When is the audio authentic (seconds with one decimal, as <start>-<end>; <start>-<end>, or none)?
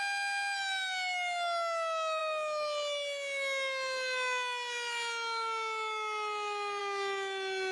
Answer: 0.0-7.7